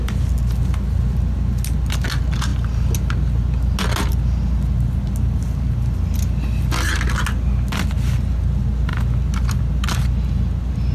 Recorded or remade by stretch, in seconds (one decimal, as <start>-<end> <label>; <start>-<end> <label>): 0.0-10.9 recorded